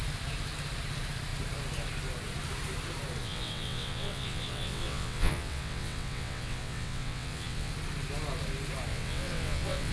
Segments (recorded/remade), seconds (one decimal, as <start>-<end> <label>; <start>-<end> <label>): 0.0-3.2 recorded; 3.2-7.7 remade; 7.7-8.9 recorded; 8.9-9.9 remade